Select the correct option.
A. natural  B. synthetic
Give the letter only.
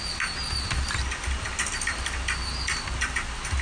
A